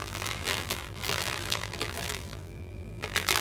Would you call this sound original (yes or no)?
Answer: no